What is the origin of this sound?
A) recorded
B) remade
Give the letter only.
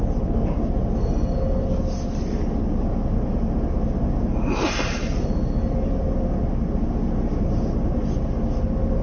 A